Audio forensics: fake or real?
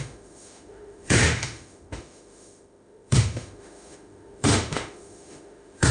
fake